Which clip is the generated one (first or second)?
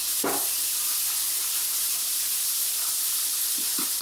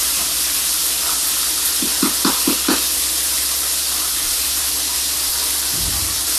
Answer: first